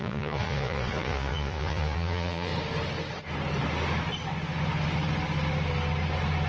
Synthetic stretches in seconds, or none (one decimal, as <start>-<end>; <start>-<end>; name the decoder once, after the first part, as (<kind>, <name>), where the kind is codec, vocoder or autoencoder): 0.0-2.5 (vocoder, Vocos)